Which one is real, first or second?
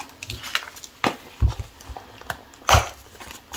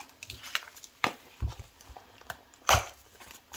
first